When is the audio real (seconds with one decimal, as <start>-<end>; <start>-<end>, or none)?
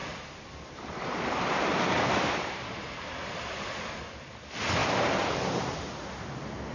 4.0-6.7